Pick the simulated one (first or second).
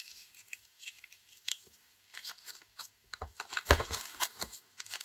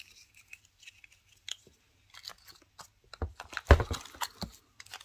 first